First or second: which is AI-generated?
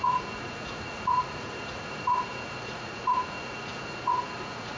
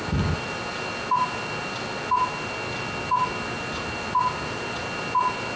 first